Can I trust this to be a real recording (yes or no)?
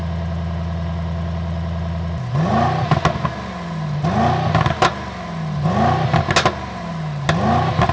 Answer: yes